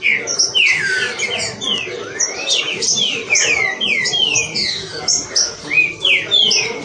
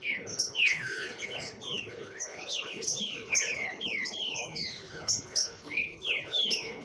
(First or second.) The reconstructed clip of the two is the second